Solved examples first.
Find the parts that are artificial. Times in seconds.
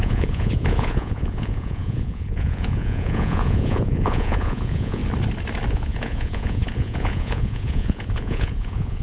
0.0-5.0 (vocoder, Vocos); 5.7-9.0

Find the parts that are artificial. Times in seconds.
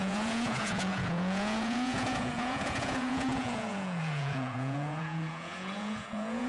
0.0-6.5 (vocoder, Vocos)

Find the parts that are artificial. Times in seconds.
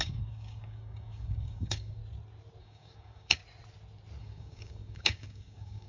0.0-2.0 (codec, DAC); 2.6-3.4; 4.2-5.9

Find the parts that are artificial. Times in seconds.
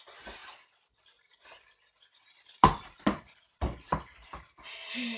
none